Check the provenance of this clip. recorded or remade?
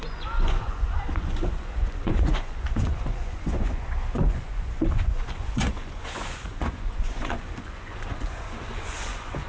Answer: remade